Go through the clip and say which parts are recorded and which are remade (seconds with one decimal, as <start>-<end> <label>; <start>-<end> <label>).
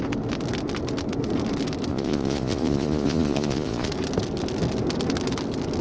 0.0-1.9 recorded; 1.9-3.9 remade; 3.9-5.8 recorded